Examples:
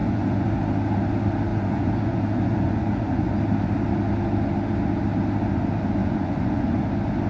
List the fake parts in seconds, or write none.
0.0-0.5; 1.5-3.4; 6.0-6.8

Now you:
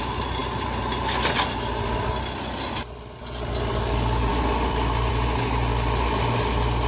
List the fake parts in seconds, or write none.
none

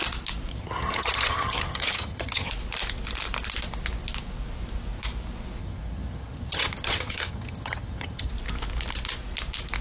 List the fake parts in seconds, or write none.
0.5-2.5; 5.6-8.3

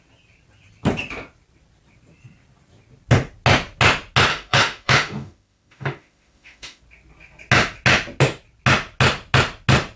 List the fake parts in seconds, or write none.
4.3-6.8

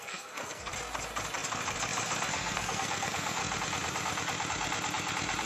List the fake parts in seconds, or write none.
0.0-0.7; 2.3-3.4

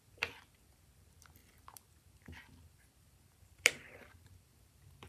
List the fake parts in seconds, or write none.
0.0-5.1